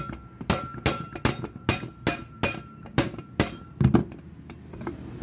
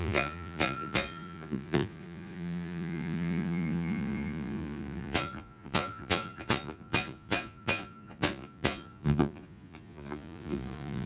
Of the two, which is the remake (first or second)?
second